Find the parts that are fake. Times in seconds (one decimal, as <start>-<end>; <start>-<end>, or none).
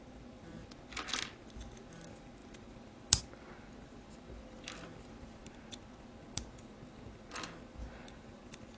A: none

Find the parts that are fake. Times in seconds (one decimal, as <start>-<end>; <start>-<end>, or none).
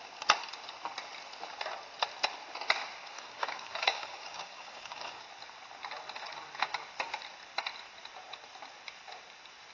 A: 3.0-5.2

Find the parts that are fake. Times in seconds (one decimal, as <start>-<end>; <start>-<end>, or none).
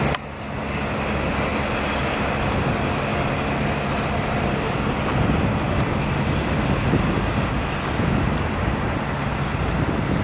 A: none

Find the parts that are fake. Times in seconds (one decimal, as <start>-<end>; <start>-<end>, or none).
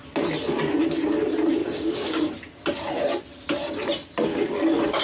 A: 1.6-2.3; 4.3-5.0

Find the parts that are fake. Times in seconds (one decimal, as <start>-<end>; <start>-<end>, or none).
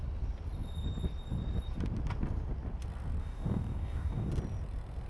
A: 3.2-4.3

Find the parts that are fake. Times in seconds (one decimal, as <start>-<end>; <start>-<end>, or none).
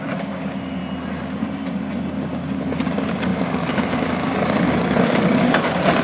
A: 0.0-0.8; 2.6-6.0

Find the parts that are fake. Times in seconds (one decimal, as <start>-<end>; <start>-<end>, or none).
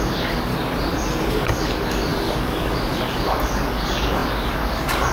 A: 0.0-0.5; 1.3-5.1